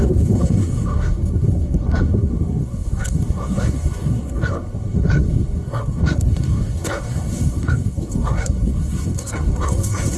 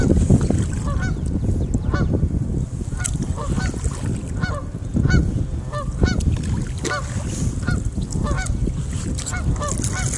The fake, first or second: first